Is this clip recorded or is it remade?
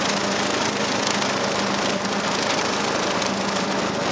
recorded